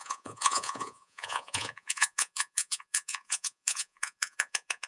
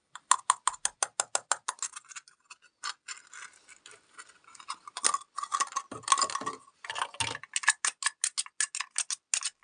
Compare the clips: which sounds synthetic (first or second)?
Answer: first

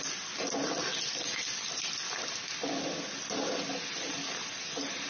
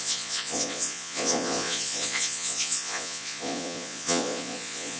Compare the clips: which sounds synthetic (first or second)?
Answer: second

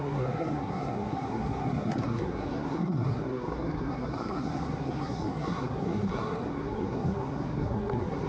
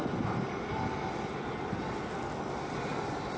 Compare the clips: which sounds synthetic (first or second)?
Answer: first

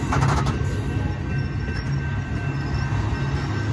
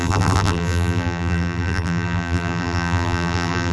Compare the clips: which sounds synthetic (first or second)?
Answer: second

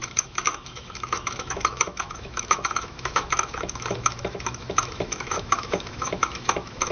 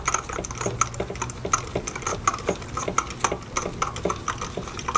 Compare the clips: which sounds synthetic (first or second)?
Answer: first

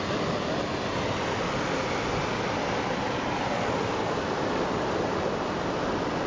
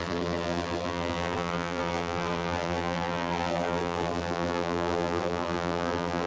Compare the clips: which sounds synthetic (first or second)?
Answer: second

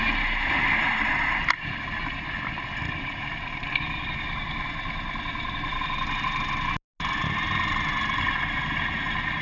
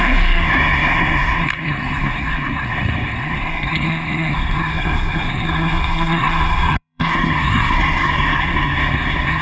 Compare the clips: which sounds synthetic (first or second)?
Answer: second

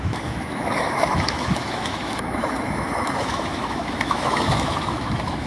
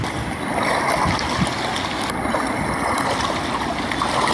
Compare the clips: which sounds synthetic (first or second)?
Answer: first